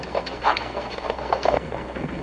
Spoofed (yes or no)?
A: yes